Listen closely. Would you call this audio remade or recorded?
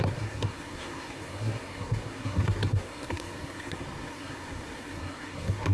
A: remade